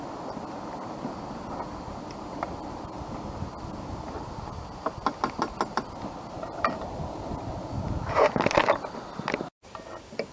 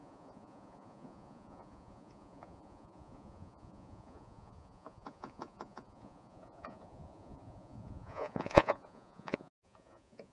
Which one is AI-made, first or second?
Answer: second